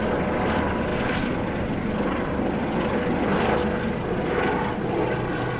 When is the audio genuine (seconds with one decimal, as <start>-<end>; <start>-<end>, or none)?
0.0-0.9; 2.8-5.6